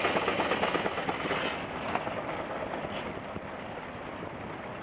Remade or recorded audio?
recorded